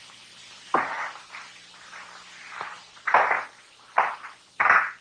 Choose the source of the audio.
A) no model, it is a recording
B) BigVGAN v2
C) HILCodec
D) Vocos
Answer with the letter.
A